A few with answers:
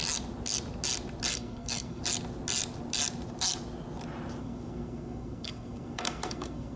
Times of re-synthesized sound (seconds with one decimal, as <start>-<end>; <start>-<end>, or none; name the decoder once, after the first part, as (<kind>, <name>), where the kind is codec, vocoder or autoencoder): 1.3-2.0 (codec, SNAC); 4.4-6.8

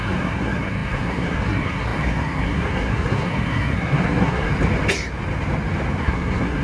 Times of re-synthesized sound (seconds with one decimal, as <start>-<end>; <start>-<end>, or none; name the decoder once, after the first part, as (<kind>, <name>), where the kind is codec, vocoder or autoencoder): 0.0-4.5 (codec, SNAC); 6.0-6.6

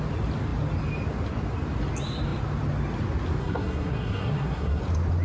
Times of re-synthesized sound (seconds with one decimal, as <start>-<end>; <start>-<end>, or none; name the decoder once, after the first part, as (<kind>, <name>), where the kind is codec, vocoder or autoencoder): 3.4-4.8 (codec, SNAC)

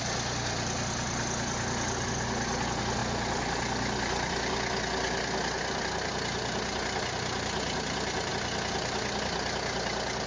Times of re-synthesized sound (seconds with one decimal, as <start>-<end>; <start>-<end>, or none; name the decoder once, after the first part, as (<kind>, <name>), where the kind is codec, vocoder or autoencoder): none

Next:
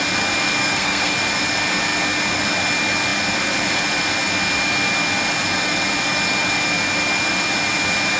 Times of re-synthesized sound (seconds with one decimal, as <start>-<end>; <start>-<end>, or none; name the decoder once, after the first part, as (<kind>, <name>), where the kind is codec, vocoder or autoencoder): 0.6-1.1 (codec, SNAC)